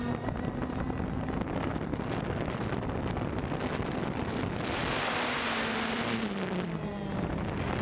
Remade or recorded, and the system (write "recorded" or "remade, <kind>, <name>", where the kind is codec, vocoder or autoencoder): recorded